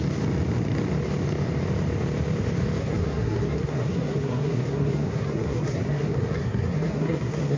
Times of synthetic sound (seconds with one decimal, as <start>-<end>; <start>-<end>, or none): 2.8-7.6